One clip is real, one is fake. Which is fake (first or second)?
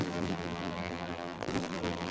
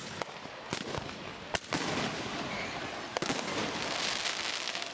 first